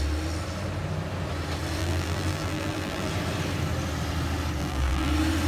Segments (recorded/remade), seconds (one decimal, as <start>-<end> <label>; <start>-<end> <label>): 0.0-1.8 recorded; 1.8-3.1 remade; 3.1-4.6 recorded; 4.6-5.1 remade; 5.1-5.5 recorded